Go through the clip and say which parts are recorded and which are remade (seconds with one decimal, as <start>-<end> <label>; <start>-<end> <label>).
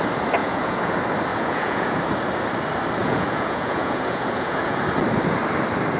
0.0-0.4 recorded; 0.4-0.9 remade; 0.9-1.3 recorded; 1.3-2.0 remade; 2.0-3.0 recorded; 3.0-4.8 remade; 4.8-6.0 recorded